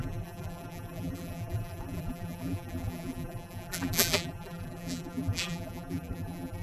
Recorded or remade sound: remade